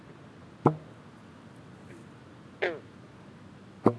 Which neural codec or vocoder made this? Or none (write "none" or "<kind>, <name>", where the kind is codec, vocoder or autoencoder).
none